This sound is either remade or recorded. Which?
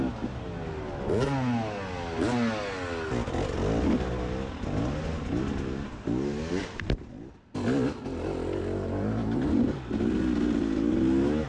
recorded